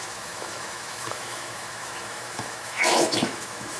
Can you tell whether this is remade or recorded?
remade